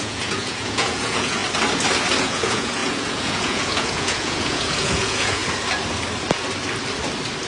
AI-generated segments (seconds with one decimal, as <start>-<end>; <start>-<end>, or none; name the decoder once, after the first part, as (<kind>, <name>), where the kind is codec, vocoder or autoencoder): 0.0-1.4 (vocoder, Vocos); 2.2-5.4